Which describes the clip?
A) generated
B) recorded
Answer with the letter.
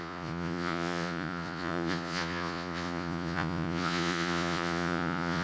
A